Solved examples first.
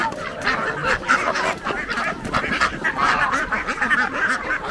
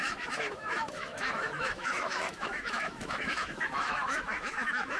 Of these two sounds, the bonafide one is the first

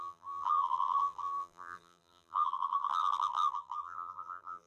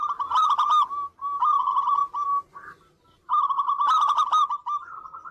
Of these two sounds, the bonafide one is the second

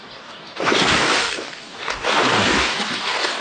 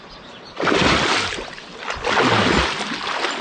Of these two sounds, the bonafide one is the second